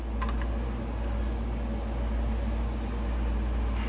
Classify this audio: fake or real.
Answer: real